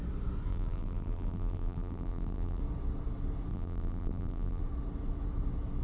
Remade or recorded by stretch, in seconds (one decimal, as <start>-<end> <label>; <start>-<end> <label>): 0.0-0.5 recorded; 0.5-2.6 remade; 2.6-3.5 recorded; 3.5-4.6 remade; 4.6-5.8 recorded